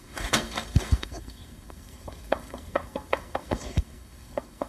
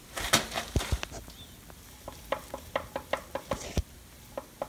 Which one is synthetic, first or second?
first